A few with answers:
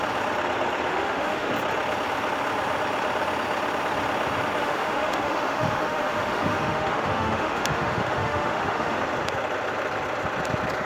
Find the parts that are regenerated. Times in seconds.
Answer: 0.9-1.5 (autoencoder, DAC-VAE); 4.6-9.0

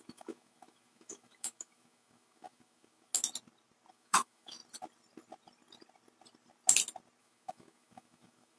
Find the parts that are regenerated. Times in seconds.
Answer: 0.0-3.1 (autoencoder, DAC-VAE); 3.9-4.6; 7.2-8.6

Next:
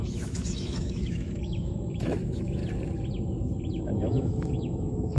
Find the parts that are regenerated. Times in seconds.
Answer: 0.0-2.6 (autoencoder, DAC-VAE); 3.8-5.2